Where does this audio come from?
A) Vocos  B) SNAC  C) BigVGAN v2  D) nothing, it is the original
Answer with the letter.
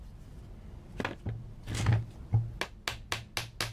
D